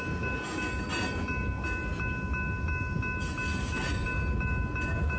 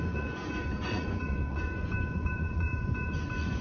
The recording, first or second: first